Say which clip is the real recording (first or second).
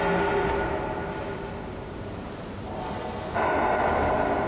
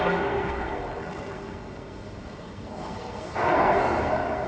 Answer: first